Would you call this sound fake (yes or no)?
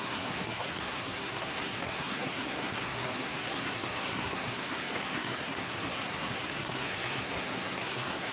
yes